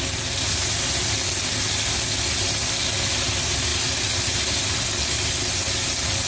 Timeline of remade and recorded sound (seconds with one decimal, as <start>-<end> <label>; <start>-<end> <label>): 0.0-6.3 recorded